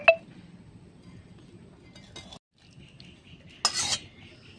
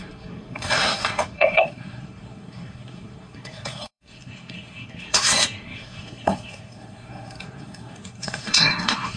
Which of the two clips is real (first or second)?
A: first